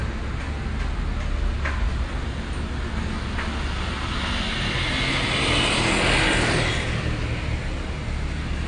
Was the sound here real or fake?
real